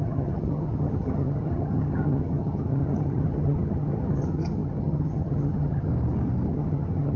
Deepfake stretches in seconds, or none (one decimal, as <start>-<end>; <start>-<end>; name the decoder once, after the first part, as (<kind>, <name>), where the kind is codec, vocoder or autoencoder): 0.0-5.9 (vocoder, HiFi-GAN); 6.5-7.2